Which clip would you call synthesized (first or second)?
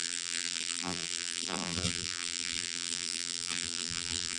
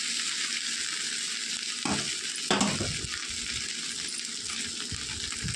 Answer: first